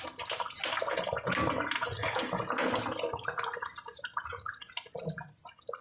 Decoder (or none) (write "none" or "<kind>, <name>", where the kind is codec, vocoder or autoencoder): none